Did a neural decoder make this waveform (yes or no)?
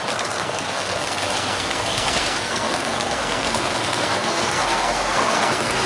yes